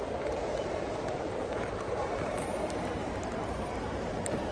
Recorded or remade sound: remade